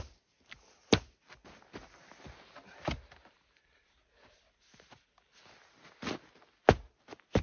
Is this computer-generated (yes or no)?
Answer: no